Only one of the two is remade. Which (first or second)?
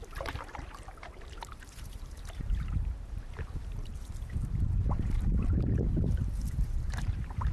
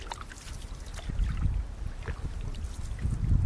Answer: first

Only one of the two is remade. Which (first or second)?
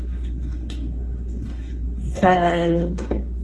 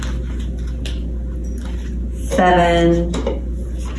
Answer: first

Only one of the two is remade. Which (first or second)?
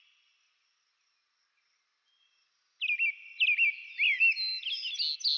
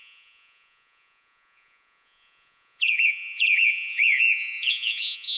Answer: second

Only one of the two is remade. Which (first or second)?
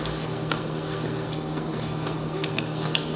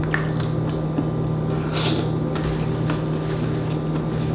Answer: first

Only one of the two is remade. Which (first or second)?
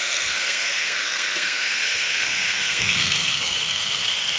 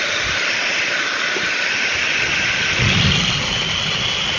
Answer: first